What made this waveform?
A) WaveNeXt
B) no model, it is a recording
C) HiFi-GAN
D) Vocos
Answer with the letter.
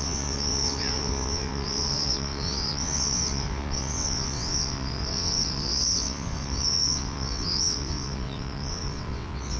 A